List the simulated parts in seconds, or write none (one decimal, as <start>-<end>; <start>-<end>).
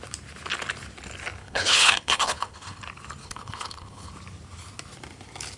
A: 1.4-2.8; 3.2-4.1